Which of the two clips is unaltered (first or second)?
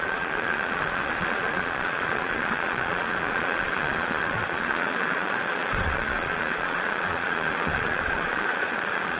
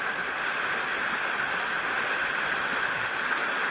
second